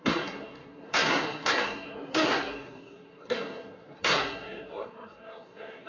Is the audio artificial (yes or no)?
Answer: yes